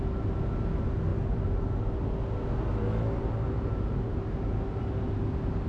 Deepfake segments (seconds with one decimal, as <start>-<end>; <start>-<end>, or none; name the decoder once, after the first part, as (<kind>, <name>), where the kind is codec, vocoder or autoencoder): none